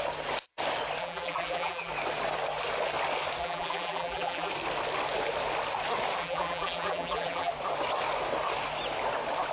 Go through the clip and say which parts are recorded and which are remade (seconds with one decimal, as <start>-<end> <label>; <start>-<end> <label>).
0.0-1.0 recorded; 1.0-1.9 remade; 1.9-3.4 recorded; 3.4-4.5 remade; 4.5-6.2 recorded; 6.2-7.5 remade; 7.5-9.5 recorded